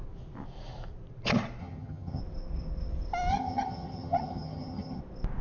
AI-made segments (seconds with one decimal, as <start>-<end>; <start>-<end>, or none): 1.6-2.2; 3.3-5.0